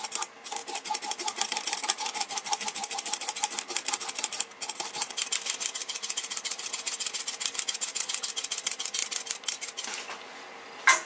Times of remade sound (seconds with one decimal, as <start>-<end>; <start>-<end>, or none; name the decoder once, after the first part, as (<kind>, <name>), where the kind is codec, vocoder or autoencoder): none